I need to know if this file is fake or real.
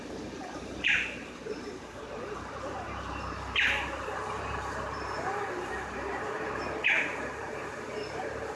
fake